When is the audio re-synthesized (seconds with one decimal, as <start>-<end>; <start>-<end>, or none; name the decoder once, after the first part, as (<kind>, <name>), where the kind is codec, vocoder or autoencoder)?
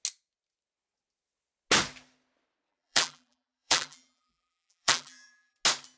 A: 2.7-5.5 (vocoder, BigVGAN v2)